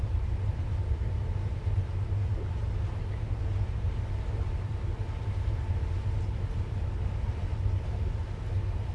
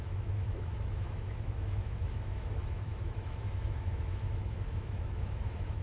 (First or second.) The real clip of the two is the first